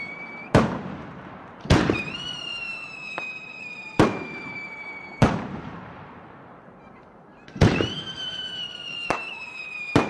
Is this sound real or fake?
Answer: fake